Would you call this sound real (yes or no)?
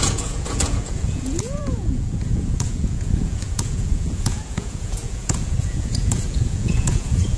no